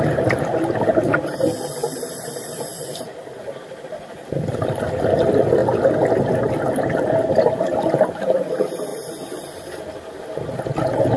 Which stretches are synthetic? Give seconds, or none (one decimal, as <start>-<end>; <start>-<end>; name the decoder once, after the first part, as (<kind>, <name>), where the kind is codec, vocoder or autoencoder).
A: 0.0-5.6 (vocoder, BigVGAN v2); 6.7-8.9; 9.6-11.2

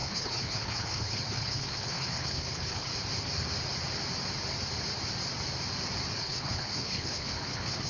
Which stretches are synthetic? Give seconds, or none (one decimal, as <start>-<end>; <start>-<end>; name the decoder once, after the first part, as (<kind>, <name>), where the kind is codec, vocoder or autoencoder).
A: 0.0-2.9 (codec, HILCodec); 6.2-7.9

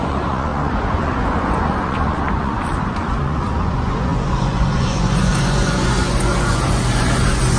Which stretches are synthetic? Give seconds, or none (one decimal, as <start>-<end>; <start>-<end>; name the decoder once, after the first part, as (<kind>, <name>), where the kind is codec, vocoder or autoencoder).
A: 0.0-7.6 (vocoder, Vocos)